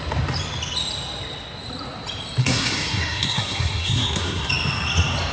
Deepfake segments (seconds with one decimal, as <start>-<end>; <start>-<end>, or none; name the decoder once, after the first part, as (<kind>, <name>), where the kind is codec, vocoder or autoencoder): 2.4-4.5 (codec, SNAC)